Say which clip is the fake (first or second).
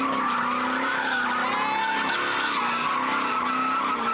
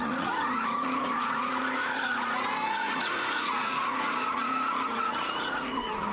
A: second